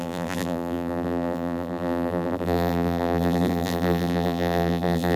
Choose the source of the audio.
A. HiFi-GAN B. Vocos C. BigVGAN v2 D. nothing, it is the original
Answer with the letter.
C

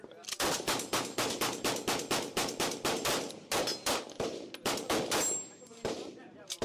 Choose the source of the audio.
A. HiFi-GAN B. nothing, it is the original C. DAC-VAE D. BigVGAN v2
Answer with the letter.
B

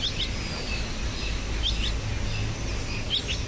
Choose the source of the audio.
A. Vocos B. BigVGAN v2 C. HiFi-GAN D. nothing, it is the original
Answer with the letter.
D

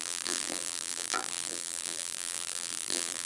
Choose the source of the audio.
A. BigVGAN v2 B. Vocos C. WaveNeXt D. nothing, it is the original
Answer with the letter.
A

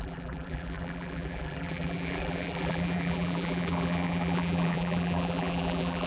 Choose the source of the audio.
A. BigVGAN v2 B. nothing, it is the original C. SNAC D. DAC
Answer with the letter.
A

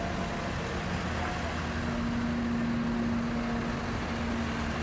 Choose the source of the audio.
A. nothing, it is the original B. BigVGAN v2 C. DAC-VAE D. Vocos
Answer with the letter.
A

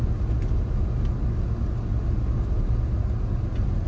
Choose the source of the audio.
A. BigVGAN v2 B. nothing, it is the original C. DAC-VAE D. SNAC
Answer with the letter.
B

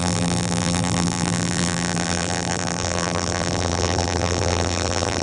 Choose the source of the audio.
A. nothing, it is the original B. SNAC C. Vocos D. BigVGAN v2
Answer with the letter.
D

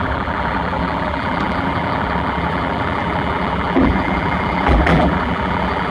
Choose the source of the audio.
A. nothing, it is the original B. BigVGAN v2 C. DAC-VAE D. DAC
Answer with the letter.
B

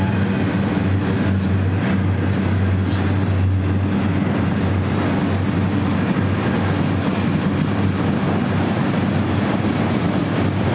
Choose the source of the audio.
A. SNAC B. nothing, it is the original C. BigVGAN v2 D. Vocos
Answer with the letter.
B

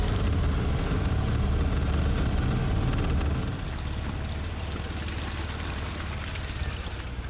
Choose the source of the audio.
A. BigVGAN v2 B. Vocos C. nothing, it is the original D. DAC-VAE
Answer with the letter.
C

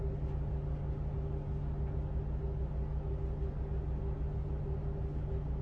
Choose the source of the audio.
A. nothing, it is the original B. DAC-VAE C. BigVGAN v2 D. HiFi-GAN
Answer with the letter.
A